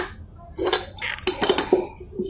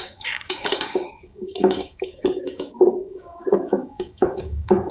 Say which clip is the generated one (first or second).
second